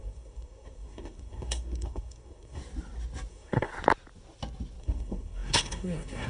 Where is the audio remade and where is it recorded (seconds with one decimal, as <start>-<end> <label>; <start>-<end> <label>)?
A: 0.0-2.6 remade; 2.6-3.3 recorded; 3.3-3.7 remade; 3.7-4.8 recorded; 4.8-6.3 remade